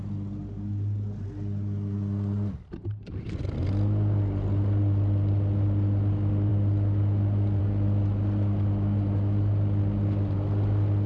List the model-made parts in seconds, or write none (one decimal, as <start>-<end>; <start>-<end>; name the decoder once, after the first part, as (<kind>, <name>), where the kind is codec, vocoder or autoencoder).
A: none